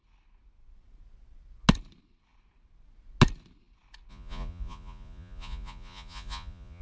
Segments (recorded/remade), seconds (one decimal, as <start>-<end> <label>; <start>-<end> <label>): 0.0-4.1 recorded; 4.1-6.8 remade

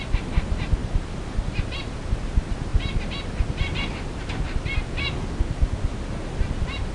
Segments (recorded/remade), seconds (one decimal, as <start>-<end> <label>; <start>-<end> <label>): 0.0-0.8 recorded; 0.8-2.0 remade; 2.0-6.9 recorded